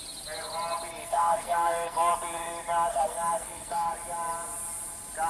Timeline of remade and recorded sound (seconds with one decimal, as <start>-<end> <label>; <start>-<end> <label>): 0.0-1.0 recorded; 1.0-2.1 remade; 2.1-2.9 recorded; 2.9-3.9 remade; 3.9-5.3 recorded